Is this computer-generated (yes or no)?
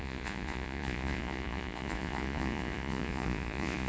yes